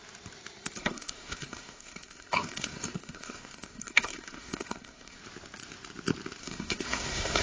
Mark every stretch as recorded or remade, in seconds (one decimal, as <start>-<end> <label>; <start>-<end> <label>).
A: 0.0-0.8 recorded; 0.8-5.2 remade; 5.2-6.4 recorded; 6.4-7.4 remade